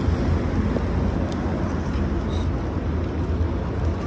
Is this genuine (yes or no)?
yes